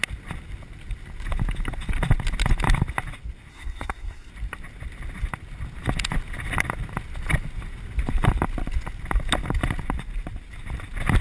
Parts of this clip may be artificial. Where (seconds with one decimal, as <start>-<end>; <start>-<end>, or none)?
3.5-4.3